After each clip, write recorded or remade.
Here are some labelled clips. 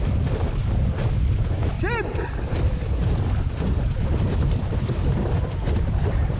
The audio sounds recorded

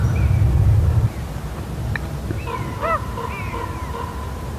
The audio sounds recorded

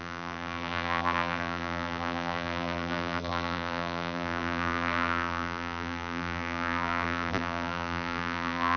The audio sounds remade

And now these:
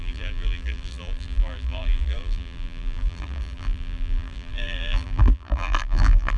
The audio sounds remade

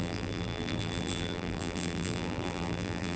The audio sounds remade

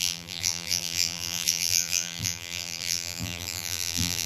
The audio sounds remade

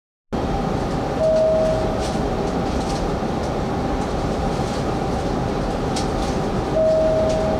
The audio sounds recorded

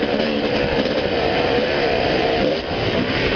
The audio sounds remade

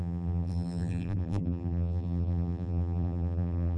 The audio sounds remade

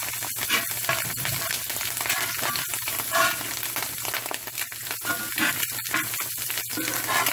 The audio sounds recorded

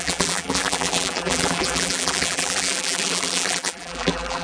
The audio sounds remade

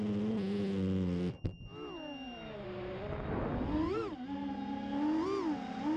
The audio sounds recorded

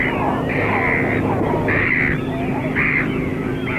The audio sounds recorded